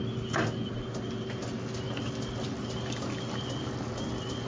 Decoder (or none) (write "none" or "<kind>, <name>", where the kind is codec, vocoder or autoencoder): none